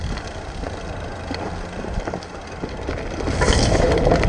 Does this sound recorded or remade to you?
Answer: recorded